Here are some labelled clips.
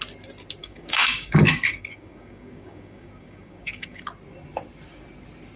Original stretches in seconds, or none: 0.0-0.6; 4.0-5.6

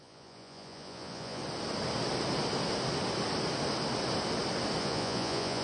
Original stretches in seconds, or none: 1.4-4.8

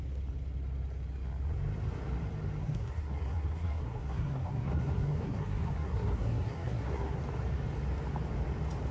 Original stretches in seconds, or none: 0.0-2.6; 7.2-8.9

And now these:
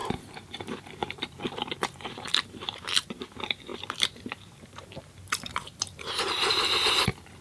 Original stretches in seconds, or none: none